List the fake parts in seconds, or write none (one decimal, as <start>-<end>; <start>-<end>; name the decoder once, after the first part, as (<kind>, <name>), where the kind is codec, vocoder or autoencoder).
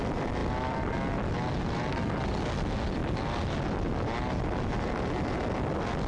none